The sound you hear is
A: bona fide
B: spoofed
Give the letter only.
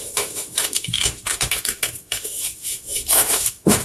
B